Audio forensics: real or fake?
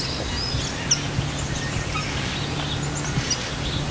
real